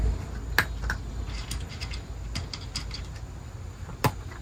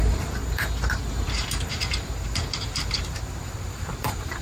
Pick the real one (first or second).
first